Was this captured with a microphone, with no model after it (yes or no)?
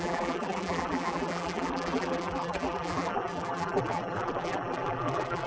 no